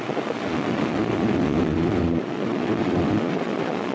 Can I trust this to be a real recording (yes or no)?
no